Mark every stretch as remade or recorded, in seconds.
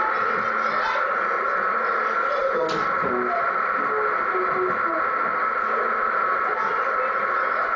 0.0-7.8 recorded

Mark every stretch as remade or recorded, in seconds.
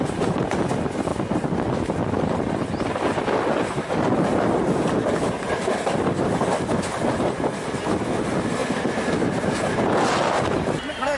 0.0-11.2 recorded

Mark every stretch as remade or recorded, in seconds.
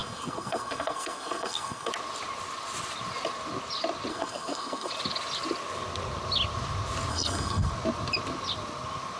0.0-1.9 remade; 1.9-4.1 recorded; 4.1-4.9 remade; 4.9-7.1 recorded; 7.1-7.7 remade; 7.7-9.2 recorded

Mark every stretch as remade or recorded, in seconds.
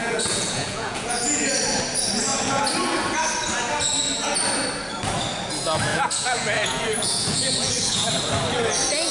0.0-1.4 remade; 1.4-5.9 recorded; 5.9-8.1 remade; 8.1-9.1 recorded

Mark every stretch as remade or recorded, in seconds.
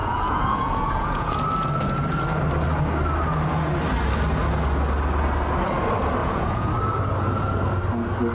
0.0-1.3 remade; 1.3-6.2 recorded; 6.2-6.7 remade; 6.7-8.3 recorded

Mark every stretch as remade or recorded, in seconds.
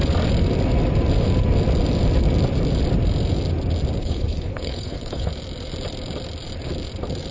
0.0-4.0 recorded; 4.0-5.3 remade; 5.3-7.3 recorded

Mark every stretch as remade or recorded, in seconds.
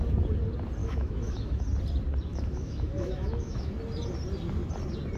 0.0-0.8 recorded; 0.8-1.6 remade; 1.6-2.3 recorded; 2.3-3.7 remade; 3.7-5.2 recorded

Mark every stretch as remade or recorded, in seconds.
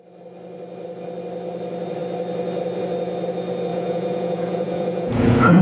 0.0-3.7 recorded; 3.7-5.6 remade